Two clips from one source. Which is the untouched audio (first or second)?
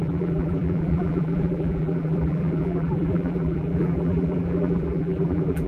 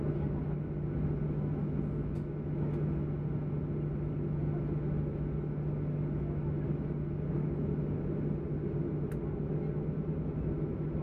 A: second